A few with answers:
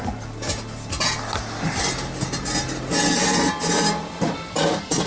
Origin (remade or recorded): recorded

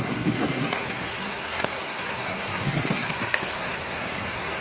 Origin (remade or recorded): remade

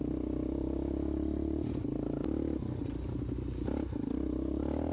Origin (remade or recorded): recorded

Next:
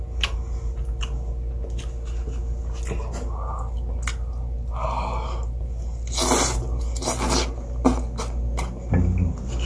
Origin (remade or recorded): recorded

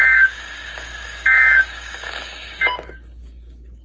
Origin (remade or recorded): remade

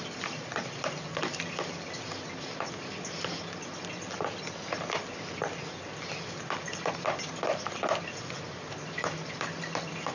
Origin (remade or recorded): recorded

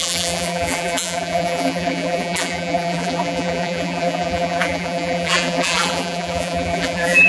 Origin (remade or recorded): remade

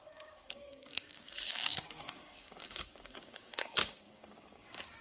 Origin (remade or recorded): remade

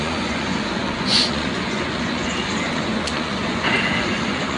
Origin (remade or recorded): remade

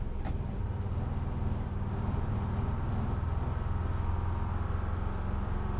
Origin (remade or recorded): recorded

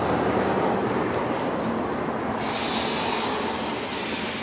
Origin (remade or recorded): recorded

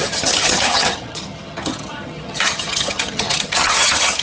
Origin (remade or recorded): remade